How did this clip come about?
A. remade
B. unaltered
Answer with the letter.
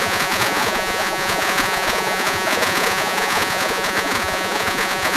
A